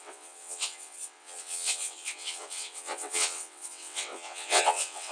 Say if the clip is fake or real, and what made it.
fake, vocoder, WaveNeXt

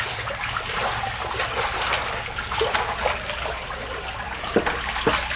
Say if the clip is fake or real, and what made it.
real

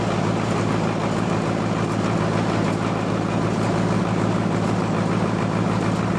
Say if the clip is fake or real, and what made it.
real